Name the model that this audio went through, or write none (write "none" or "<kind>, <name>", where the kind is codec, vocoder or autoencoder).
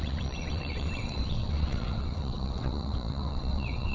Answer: vocoder, WaveNeXt